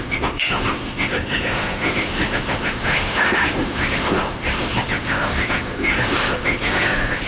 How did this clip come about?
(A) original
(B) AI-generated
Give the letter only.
B